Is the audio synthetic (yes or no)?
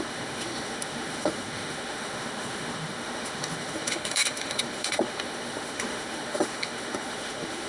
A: yes